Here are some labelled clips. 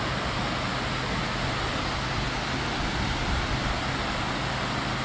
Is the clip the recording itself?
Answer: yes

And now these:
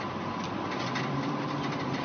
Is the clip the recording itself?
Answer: no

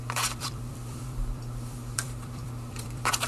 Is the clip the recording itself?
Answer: no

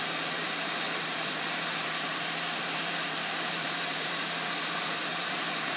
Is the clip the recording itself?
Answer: no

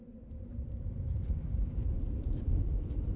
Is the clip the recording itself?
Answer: no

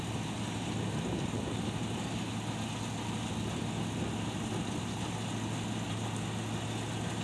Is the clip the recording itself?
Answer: yes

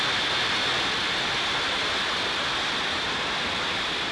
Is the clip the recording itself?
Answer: yes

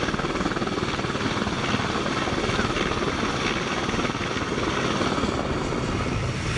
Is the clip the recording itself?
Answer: yes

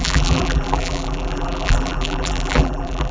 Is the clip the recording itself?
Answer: no